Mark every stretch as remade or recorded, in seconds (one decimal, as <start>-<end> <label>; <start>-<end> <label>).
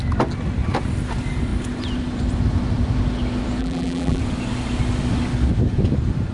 0.0-3.6 recorded; 3.6-4.2 remade; 4.2-6.3 recorded